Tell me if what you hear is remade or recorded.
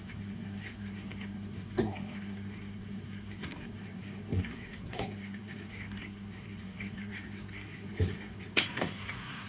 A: remade